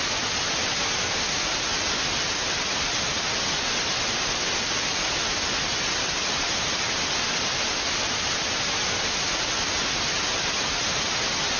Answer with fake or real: real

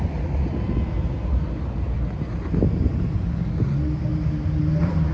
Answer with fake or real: real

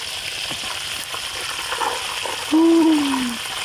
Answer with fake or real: real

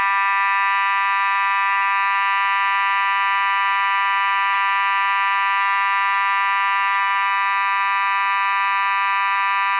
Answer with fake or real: real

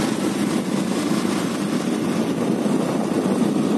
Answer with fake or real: real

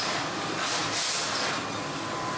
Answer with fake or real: real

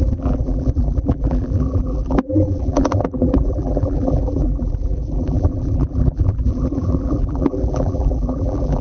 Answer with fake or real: fake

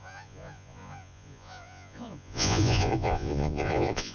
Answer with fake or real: fake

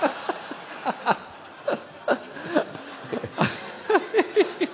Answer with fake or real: real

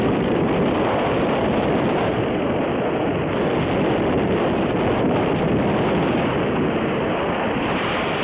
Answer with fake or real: real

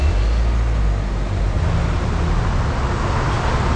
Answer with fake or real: real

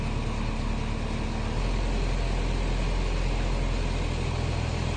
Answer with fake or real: real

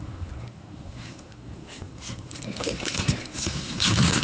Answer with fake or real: fake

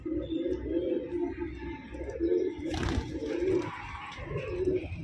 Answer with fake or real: real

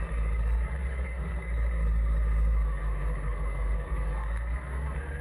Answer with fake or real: fake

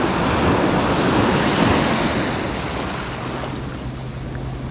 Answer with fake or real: real